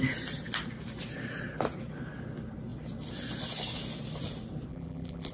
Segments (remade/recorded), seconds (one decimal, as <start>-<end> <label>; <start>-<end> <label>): 0.0-4.7 recorded; 4.7-5.3 remade